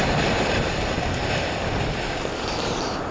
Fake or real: real